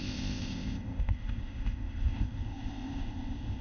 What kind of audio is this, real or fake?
fake